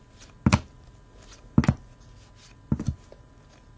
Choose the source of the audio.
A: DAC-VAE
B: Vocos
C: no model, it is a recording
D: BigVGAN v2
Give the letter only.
C